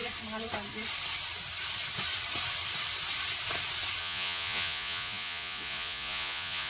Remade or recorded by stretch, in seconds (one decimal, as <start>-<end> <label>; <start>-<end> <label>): 0.0-4.0 recorded; 4.0-6.7 remade